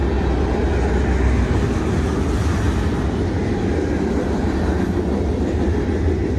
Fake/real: real